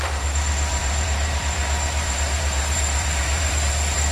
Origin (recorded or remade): remade